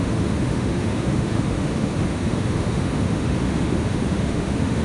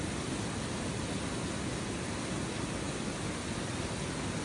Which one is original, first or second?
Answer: second